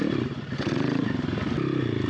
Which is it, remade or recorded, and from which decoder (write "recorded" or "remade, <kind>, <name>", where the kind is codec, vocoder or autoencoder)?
recorded